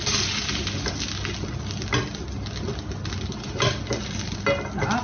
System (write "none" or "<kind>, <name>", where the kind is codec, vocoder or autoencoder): none